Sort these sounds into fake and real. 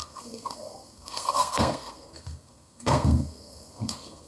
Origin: fake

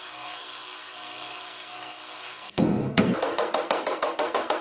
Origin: fake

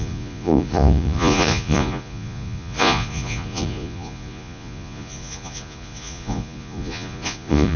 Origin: fake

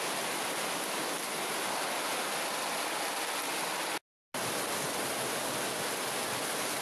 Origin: real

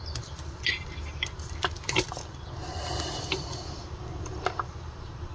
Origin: real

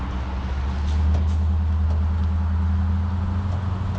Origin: real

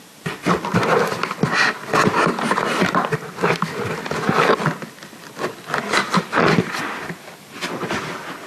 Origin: real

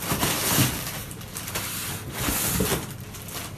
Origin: real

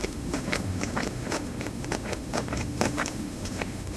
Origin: fake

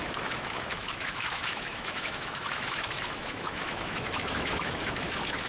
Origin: fake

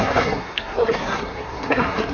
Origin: fake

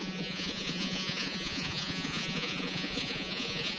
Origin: fake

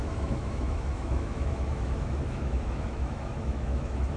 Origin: fake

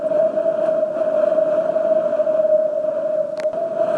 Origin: real